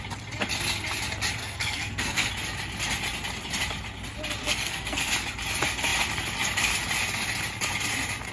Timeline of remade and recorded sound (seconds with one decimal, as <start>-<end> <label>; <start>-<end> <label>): 0.0-1.4 recorded; 1.4-2.3 remade; 2.3-4.4 recorded; 4.4-5.1 remade; 5.1-8.3 recorded